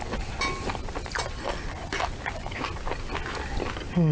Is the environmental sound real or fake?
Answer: real